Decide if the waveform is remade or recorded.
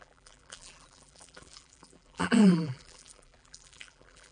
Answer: remade